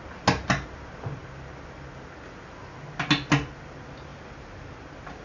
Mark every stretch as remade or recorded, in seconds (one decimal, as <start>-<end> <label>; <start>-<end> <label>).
0.0-4.1 recorded; 4.1-5.2 remade